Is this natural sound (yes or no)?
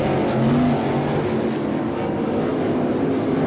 yes